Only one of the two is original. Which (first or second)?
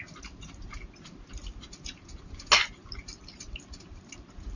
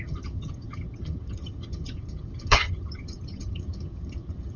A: first